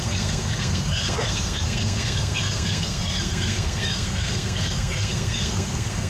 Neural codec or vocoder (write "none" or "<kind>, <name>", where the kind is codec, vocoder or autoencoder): codec, SNAC